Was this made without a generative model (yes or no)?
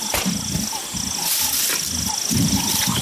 yes